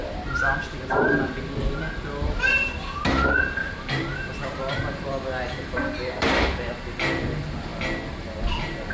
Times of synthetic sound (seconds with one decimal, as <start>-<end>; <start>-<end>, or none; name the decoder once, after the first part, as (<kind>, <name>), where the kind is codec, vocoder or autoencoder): 3.6-6.7 (vocoder, BigVGAN v2)